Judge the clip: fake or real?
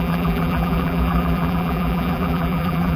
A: fake